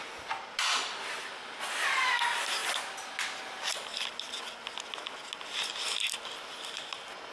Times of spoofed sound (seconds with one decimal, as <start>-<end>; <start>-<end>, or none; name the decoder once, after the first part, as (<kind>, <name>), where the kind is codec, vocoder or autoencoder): none